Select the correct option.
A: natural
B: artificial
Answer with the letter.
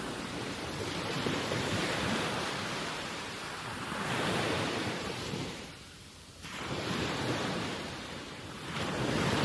B